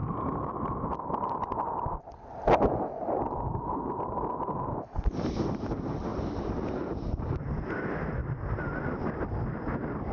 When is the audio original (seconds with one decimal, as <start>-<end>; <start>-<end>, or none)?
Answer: 0.0-10.1